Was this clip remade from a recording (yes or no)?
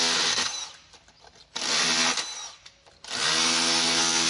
no